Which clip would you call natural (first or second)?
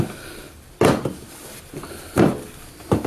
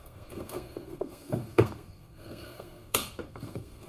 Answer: first